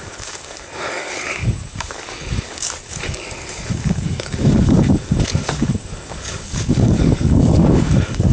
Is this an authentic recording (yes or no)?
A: no